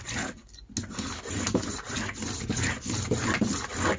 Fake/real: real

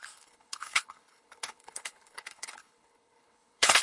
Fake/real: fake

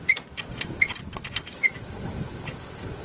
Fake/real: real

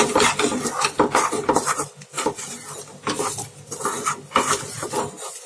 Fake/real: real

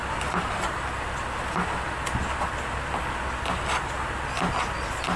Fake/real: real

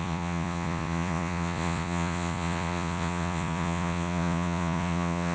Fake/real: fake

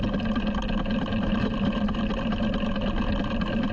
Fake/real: real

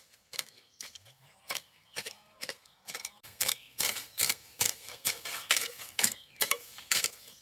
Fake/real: fake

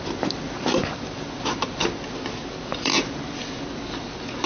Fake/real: real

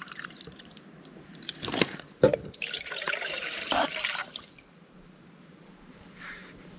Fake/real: fake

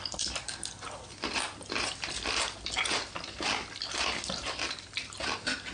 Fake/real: fake